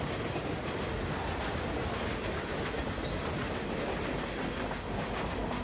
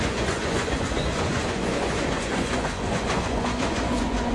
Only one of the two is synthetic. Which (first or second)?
second